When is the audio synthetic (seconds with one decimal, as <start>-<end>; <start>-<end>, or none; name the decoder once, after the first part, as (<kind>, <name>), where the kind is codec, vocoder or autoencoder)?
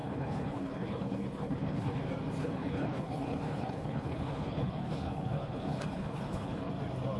0.0-2.0 (codec, HILCodec); 2.4-6.7